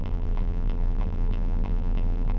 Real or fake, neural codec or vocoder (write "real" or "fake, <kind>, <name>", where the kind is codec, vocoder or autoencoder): fake, vocoder, BigVGAN v2